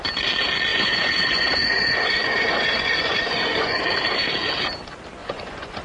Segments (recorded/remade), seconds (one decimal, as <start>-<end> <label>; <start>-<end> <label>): 0.0-0.7 recorded; 0.7-3.9 remade; 3.9-5.2 recorded; 5.2-5.8 remade